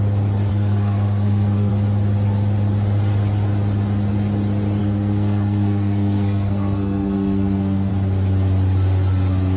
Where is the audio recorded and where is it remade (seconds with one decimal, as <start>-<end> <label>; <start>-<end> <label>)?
0.0-0.5 recorded; 0.5-1.7 remade; 1.7-4.8 recorded; 4.8-7.9 remade; 7.9-9.6 recorded